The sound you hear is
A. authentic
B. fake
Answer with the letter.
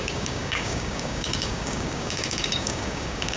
B